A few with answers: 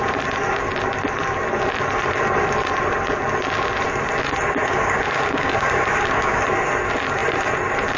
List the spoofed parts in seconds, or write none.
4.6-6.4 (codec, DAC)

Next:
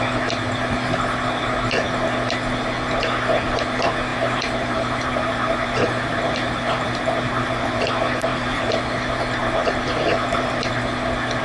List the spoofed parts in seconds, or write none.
4.1-7.8 (vocoder, BigVGAN v2); 8.3-8.8; 9.4-10.7